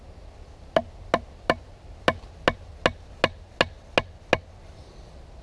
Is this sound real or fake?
real